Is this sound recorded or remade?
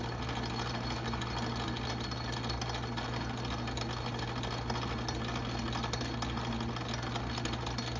recorded